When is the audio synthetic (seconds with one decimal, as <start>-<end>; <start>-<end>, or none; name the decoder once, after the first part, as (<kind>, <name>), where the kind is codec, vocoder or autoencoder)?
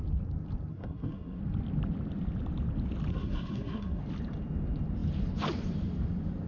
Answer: 0.7-1.4 (codec, SNAC); 3.1-4.0